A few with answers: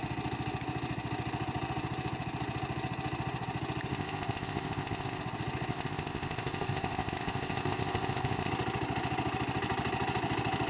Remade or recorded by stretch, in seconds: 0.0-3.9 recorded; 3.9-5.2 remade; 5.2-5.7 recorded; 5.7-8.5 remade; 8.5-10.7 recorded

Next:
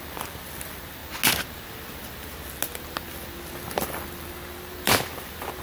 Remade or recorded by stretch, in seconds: 0.0-1.0 remade; 1.0-3.5 recorded; 3.5-5.6 remade

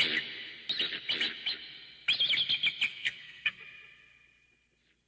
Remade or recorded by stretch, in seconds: 0.0-2.9 recorded; 2.9-3.6 remade; 3.6-5.1 recorded

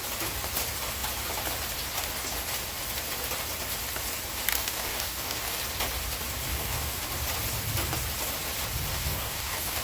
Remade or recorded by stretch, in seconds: 0.0-4.5 recorded; 4.5-5.6 remade; 5.6-6.5 recorded; 6.5-7.1 remade; 7.1-8.9 recorded; 8.9-9.8 remade

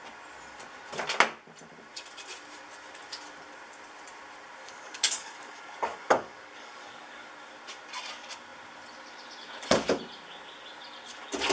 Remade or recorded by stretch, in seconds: 0.0-4.6 recorded; 4.6-7.3 remade; 7.3-11.5 recorded

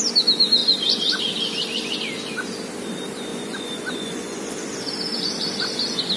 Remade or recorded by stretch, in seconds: 0.0-3.3 recorded; 3.3-4.5 remade; 4.5-6.2 recorded